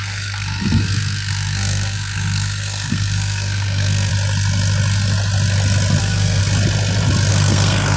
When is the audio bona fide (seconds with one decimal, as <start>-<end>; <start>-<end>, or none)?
4.1-6.0; 6.4-7.3